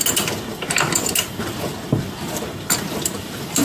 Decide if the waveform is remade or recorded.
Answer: recorded